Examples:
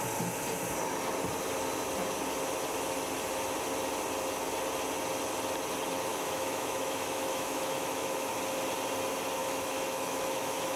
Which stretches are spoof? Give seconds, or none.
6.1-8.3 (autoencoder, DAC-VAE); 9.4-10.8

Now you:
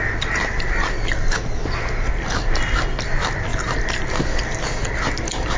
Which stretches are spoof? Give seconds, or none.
none

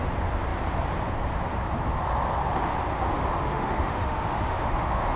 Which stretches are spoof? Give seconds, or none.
3.5-5.2 (autoencoder, DAC-VAE)

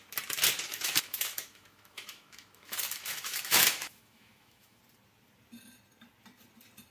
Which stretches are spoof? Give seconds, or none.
0.7-4.8 (autoencoder, DAC-VAE)

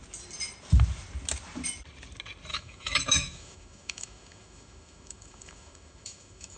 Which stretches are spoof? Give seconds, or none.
2.5-6.6 (autoencoder, DAC-VAE)